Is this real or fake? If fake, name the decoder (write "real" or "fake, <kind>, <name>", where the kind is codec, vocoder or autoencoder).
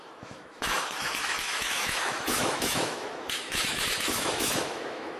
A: fake, autoencoder, DAC-VAE